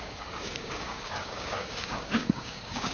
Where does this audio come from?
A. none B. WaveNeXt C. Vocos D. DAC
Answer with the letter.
D